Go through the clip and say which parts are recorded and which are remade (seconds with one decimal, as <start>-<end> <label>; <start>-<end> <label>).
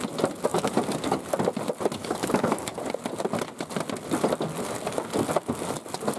0.0-0.5 recorded; 0.5-1.2 remade; 1.2-2.0 recorded; 2.0-2.8 remade; 2.8-6.2 recorded